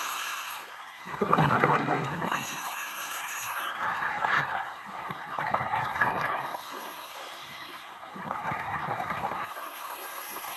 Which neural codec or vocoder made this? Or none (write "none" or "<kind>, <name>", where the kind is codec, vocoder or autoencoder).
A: codec, SNAC